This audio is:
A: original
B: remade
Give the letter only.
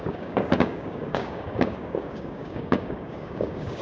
B